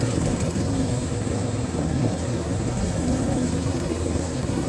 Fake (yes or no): yes